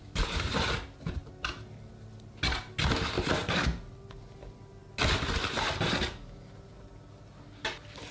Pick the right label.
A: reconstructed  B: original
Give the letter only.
B